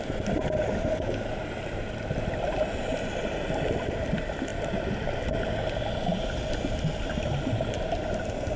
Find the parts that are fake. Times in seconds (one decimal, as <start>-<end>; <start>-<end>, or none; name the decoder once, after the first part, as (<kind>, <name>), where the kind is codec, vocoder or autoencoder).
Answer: none